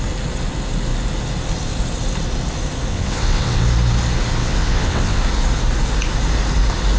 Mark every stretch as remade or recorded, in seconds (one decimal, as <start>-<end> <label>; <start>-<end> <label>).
0.0-2.9 recorded; 2.9-3.6 remade; 3.6-4.4 recorded; 4.4-5.2 remade; 5.2-7.0 recorded